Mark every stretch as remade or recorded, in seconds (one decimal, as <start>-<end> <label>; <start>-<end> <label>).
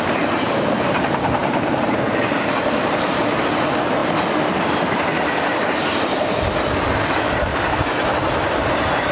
0.0-4.0 remade; 4.0-6.8 recorded; 6.8-7.5 remade; 7.5-8.5 recorded; 8.5-9.1 remade